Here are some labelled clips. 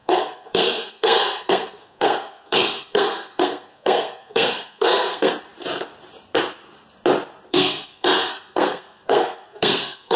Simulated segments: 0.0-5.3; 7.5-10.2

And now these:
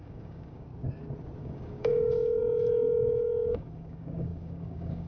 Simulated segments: 0.0-0.7; 1.4-5.1

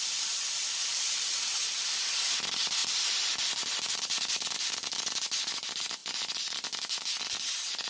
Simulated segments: none